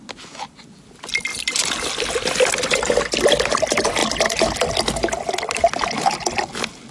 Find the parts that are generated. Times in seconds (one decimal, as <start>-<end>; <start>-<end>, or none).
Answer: none